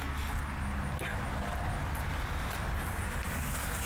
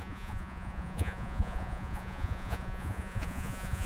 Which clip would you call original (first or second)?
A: first